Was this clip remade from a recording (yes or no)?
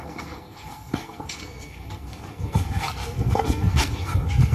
yes